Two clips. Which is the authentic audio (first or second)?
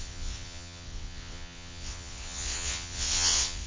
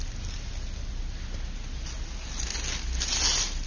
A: second